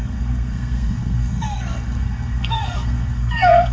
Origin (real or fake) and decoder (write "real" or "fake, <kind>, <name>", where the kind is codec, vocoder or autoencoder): fake, codec, SNAC